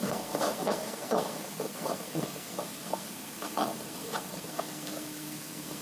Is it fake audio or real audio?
fake